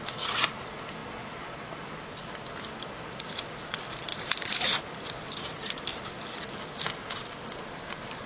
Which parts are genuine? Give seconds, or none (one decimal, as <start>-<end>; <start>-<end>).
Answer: 0.0-4.1; 5.1-8.3